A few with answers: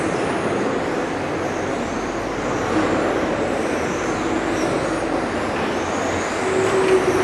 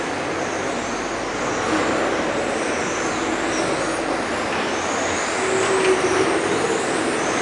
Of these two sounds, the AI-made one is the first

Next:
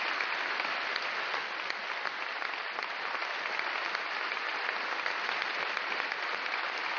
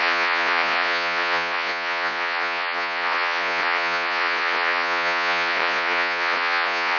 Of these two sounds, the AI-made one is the second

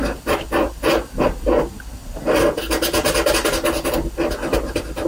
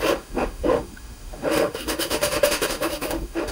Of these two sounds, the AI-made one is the second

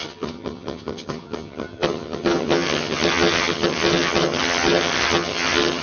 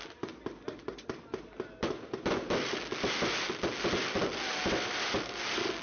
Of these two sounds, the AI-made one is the first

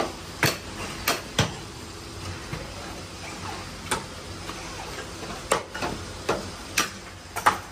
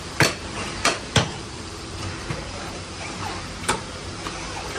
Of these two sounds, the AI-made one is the second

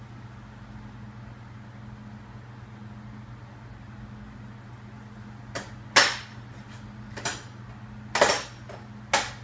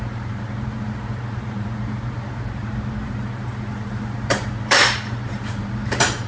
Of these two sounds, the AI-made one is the second